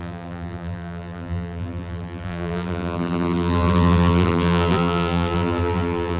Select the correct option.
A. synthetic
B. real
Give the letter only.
A